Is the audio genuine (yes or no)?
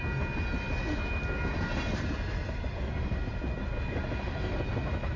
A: yes